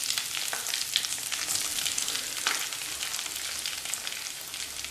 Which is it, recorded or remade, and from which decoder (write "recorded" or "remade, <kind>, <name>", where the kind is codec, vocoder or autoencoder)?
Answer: recorded